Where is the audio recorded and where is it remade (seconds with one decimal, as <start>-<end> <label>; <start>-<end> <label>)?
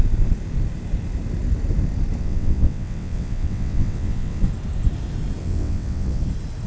0.0-2.2 recorded; 2.2-4.4 remade; 4.4-5.4 recorded; 5.4-6.2 remade; 6.2-6.7 recorded